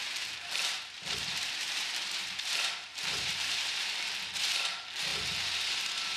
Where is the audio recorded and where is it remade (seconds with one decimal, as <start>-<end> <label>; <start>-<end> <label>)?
0.0-2.2 remade; 2.2-2.9 recorded; 2.9-4.2 remade; 4.2-6.2 recorded